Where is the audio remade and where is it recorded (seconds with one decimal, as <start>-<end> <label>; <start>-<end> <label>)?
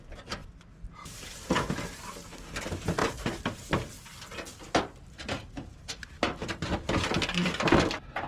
0.0-0.4 recorded; 0.4-2.1 remade; 2.1-3.0 recorded; 3.0-3.7 remade; 3.7-8.3 recorded